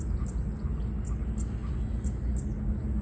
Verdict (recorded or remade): recorded